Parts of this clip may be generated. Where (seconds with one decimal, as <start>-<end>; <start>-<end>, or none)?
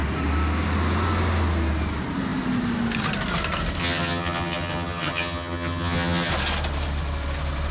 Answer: 3.8-6.3